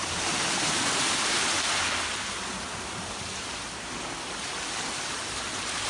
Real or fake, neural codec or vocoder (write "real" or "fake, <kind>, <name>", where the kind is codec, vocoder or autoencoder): fake, vocoder, BigVGAN v2